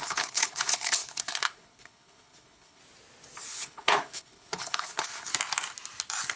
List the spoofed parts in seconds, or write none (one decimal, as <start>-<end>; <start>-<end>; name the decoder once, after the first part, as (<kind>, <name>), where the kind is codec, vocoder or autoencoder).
0.0-2.8 (codec, HILCodec); 3.5-5.3